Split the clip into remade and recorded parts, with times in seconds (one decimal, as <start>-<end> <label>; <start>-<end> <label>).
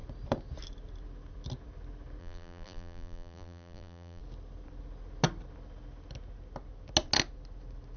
0.0-2.2 recorded; 2.2-4.2 remade; 4.2-8.0 recorded